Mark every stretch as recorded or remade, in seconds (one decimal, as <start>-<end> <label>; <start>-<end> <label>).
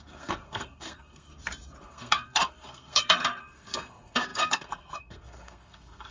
0.0-1.3 remade; 1.3-1.8 recorded; 1.8-6.1 remade